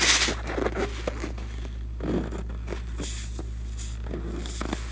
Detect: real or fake real